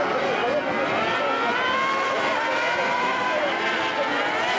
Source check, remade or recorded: recorded